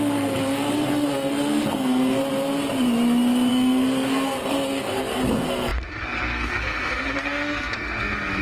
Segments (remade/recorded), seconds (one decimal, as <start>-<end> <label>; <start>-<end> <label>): 0.0-2.2 remade; 2.2-3.5 recorded; 3.5-8.4 remade